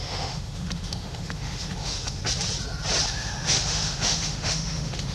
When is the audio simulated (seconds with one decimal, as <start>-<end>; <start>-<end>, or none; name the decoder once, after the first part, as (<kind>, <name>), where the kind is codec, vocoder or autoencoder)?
0.0-2.2 (autoencoder, DAC-VAE); 3.1-5.1